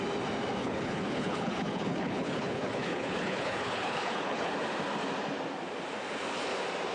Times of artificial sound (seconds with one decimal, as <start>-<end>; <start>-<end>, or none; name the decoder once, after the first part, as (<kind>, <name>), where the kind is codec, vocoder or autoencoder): 0.6-4.5 (codec, HILCodec)